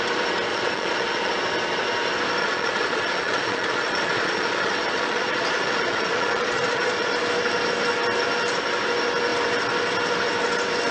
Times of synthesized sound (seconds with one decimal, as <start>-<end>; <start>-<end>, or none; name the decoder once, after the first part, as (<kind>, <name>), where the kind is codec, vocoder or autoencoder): 0.5-1.3 (vocoder, Vocos); 2.4-7.1